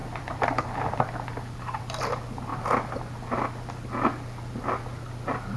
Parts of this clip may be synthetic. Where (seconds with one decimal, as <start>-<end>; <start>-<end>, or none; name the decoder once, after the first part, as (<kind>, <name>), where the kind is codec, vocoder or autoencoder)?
0.0-2.0 (vocoder, BigVGAN v2)

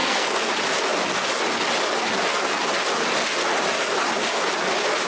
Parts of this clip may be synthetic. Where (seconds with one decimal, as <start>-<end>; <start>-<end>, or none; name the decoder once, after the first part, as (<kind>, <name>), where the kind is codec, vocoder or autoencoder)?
0.0-0.5 (codec, SNAC)

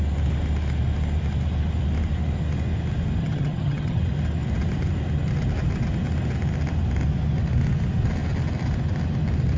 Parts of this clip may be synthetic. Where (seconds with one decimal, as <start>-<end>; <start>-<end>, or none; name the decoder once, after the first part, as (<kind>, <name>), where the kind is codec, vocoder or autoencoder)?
3.2-4.0 (vocoder, HiFi-GAN)

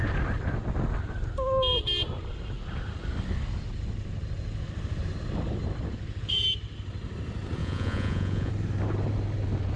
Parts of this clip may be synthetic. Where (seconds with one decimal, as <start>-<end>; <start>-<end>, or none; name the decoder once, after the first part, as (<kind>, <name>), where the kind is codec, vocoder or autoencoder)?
7.6-8.5 (vocoder, Vocos)

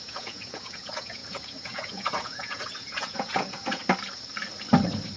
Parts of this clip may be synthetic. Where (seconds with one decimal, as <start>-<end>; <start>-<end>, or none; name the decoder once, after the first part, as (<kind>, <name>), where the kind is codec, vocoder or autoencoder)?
0.0-3.8 (vocoder, Vocos)

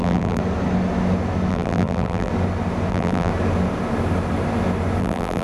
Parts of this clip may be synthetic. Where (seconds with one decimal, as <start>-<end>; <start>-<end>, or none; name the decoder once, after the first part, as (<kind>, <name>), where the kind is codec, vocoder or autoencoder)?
0.0-0.4 (vocoder, BigVGAN v2); 1.5-2.3; 2.9-3.3; 5.0-5.4

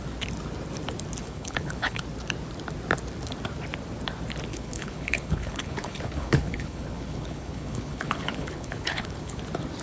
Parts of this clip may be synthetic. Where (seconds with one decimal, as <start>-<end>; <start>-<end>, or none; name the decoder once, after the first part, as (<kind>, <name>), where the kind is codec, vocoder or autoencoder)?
1.2-2.0 (codec, HILCodec); 4.5-9.4